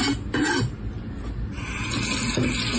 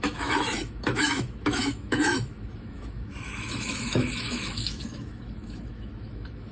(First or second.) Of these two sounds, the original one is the first